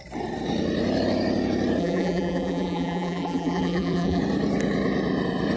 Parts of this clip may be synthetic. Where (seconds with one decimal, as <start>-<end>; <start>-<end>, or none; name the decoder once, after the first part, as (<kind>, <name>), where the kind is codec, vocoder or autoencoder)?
1.8-4.2 (vocoder, BigVGAN v2)